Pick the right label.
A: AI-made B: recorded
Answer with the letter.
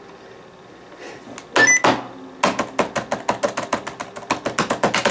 B